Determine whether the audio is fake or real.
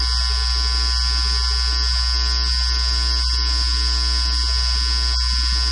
real